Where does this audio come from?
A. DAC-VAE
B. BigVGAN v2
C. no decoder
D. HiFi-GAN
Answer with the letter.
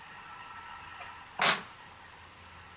C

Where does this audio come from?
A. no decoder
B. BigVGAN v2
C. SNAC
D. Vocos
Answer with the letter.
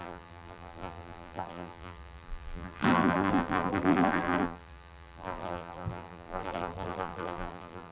B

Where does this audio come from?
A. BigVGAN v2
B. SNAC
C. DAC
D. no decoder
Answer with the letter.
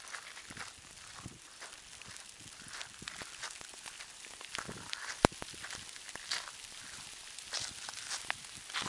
D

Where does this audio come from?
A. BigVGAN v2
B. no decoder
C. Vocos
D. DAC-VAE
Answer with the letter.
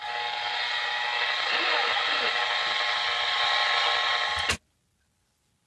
B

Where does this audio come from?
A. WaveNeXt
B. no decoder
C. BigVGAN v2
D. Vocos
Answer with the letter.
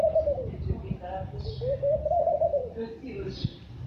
B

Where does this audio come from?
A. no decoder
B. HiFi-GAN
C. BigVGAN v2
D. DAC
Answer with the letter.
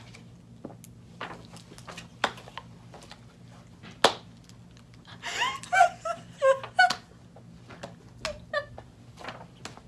A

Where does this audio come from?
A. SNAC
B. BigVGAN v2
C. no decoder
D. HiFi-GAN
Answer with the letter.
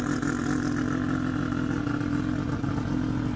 C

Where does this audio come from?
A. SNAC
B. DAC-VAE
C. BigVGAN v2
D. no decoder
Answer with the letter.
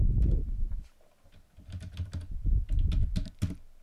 D